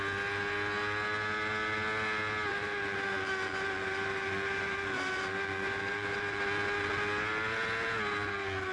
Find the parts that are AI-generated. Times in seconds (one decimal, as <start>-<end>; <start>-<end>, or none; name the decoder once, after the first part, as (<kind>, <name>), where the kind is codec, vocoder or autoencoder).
2.5-6.4 (vocoder, BigVGAN v2)